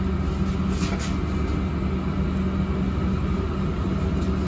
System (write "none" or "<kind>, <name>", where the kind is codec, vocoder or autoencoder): none